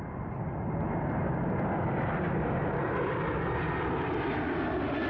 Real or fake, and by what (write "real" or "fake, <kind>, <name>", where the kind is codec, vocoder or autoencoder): real